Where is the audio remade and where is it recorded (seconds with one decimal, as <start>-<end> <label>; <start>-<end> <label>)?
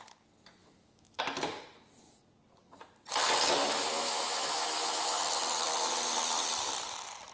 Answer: 0.0-0.6 recorded; 0.6-1.2 remade; 1.2-3.6 recorded; 3.6-5.2 remade; 5.2-7.3 recorded